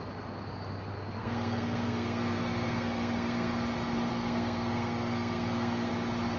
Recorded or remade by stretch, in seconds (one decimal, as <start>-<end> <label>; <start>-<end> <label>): 0.0-1.2 recorded; 1.2-3.5 remade; 3.5-4.1 recorded; 4.1-5.9 remade; 5.9-6.4 recorded